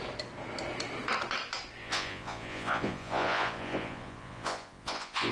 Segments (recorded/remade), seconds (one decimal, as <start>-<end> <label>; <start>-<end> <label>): 0.0-1.8 recorded; 1.8-5.3 remade